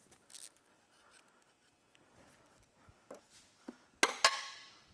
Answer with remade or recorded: recorded